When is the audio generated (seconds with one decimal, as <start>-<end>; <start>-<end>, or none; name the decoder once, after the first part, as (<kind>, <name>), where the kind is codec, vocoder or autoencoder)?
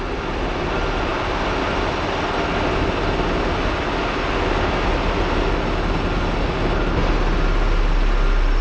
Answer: none